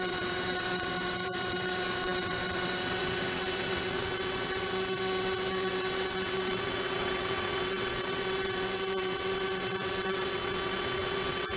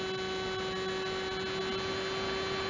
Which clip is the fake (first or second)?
first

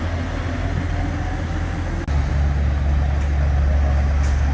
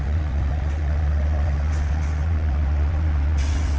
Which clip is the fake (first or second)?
second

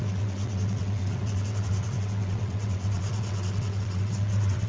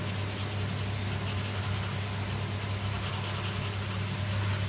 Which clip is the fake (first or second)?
first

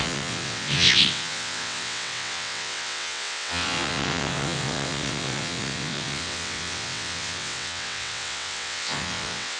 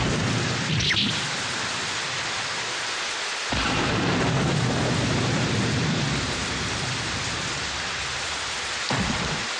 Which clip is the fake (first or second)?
first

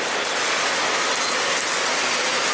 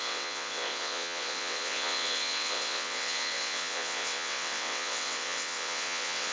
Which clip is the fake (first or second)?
second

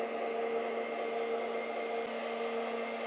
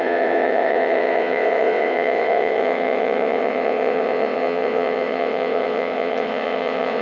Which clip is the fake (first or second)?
second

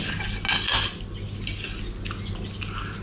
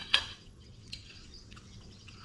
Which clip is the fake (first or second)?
second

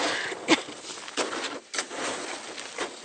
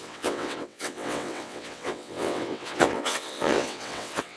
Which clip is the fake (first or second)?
second